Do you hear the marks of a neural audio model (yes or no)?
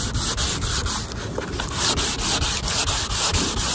no